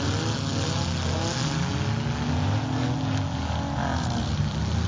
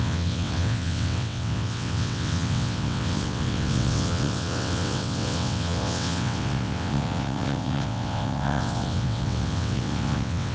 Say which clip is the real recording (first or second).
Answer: first